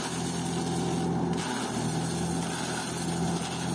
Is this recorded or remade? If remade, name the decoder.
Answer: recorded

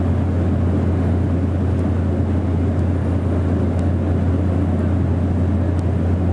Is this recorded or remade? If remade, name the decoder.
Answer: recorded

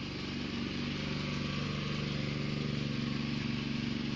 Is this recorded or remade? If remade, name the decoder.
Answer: recorded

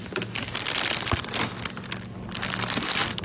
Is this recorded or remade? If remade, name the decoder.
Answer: recorded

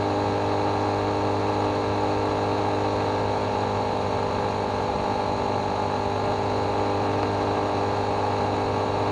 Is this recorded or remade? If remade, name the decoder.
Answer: recorded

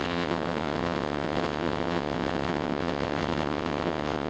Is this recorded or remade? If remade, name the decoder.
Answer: remade, vocoder, WaveNeXt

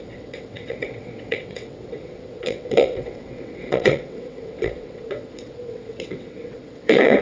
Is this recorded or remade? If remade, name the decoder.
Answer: remade, vocoder, WaveNeXt